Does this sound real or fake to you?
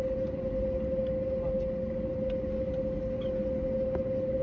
real